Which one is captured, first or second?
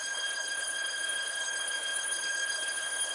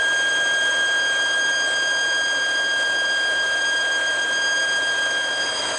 second